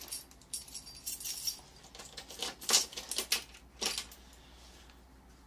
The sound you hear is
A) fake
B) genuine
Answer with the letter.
B